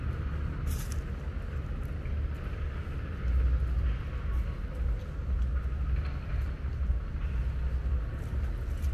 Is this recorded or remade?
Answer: recorded